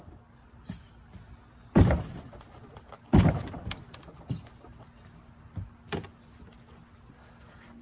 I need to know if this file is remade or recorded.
recorded